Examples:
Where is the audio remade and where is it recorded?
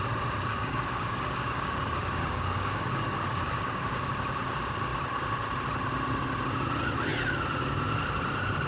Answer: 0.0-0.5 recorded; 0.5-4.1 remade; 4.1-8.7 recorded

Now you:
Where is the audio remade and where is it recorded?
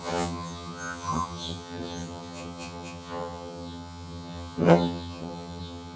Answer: 0.0-6.0 remade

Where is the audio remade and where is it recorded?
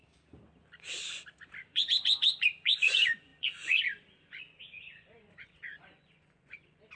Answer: 0.0-1.6 recorded; 1.6-7.0 remade